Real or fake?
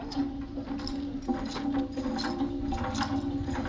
real